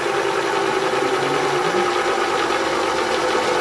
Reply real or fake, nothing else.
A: real